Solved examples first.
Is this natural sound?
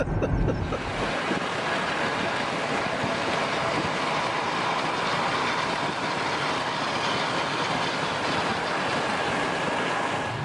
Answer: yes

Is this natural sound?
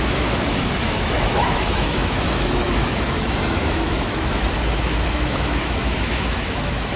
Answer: no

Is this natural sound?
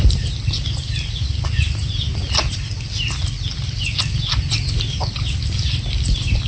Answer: yes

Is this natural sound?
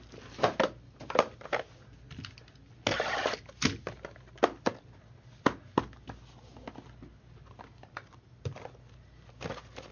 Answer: yes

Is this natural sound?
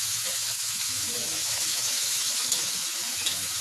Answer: no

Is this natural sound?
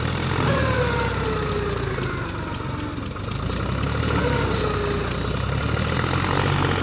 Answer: yes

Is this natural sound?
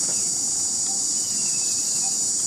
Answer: yes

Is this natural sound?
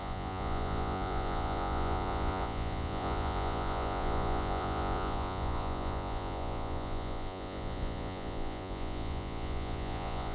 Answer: no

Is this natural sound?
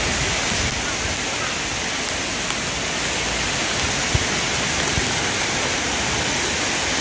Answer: yes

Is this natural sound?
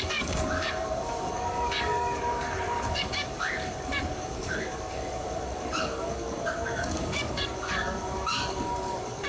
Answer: no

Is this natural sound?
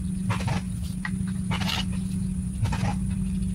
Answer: yes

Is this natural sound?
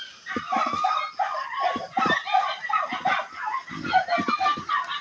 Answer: yes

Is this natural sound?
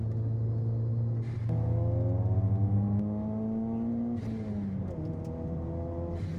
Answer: yes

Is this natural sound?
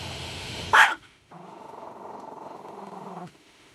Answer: no